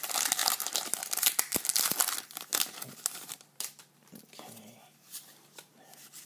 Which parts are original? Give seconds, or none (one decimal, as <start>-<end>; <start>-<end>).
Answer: 0.4-1.7; 2.5-3.3